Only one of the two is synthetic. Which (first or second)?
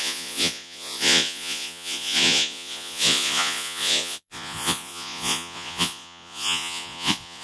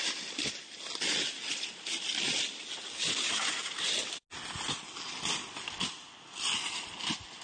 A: first